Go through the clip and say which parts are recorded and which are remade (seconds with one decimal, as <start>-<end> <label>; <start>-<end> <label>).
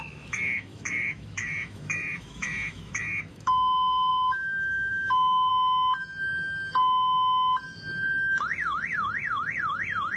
0.0-5.5 remade; 5.5-10.2 recorded